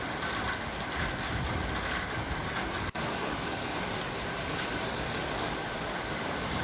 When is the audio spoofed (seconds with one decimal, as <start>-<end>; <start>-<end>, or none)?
2.4-6.6